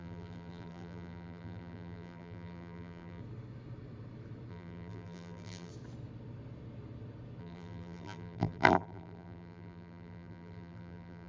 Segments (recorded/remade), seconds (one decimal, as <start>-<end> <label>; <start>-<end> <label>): 0.0-3.2 remade; 3.2-4.5 recorded; 4.5-5.7 remade; 5.7-7.4 recorded; 7.4-11.3 remade